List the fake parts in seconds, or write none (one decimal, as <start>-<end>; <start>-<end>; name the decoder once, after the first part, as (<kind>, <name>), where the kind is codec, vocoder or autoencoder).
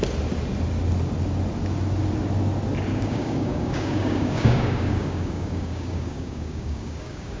2.9-7.4 (codec, DAC)